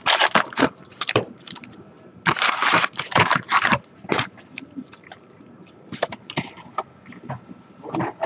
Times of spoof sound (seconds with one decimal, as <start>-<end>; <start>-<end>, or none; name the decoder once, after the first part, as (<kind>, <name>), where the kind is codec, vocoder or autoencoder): 0.9-1.5 (vocoder, BigVGAN v2); 2.6-6.7